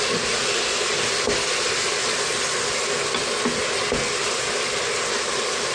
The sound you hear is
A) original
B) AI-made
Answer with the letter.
A